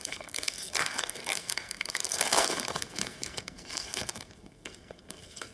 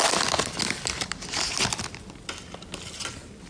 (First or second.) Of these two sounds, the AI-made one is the first